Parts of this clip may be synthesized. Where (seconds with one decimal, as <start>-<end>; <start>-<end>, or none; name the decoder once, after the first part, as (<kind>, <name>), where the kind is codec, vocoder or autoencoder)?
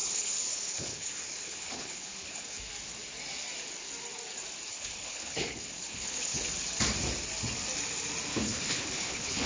0.0-2.6 (codec, HILCodec); 4.7-6.4; 8.3-9.5